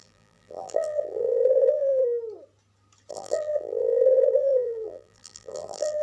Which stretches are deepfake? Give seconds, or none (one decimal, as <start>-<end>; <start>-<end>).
0.0-2.0; 3.1-6.0

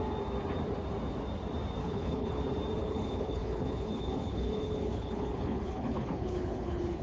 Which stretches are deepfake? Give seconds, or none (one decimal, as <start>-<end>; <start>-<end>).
1.8-2.4; 2.8-7.0

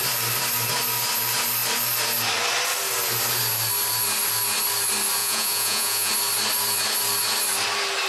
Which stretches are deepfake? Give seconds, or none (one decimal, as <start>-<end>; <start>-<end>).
5.2-6.1

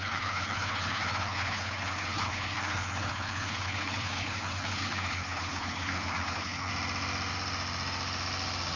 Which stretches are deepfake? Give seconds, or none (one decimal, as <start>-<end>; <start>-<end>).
0.0-6.7

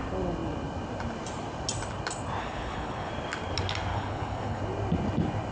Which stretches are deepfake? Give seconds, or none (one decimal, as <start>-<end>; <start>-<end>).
2.4-3.1; 3.9-4.6

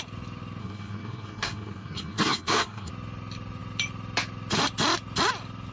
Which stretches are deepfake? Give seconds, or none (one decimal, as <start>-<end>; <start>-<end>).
0.6-2.9